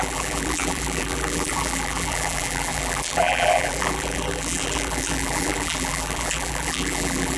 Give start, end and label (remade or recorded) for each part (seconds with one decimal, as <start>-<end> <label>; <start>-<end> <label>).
0.0-7.4 remade